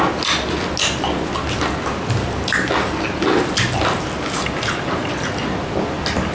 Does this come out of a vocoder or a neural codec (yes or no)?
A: no